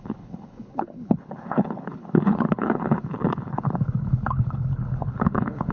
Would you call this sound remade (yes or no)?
yes